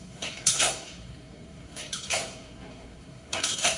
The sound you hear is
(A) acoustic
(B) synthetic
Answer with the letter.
B